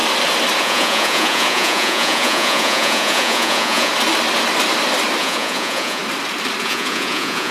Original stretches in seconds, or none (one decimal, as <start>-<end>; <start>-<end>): 0.0-0.6; 3.9-5.2; 6.0-6.6